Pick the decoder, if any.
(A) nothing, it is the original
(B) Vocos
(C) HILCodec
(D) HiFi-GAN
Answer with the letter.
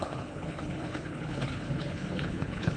C